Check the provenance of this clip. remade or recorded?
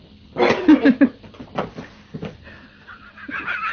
remade